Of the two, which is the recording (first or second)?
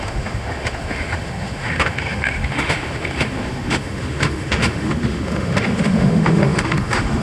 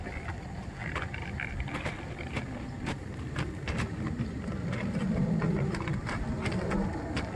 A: second